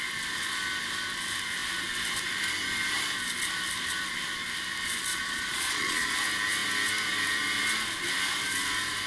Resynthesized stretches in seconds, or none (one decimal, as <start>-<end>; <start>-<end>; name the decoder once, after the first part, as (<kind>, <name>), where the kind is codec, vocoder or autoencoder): 5.1-6.1 (vocoder, Vocos)